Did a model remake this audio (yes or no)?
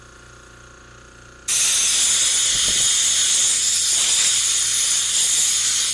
no